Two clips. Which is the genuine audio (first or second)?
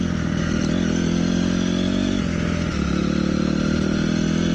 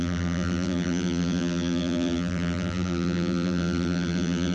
first